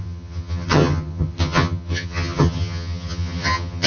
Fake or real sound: fake